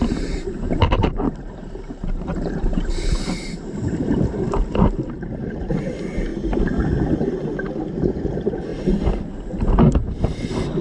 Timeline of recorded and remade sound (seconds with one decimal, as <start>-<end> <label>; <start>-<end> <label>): 0.0-6.3 remade; 6.3-7.9 recorded; 7.9-10.8 remade